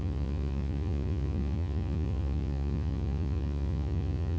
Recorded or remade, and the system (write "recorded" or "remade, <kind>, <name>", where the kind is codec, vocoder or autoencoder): remade, vocoder, Vocos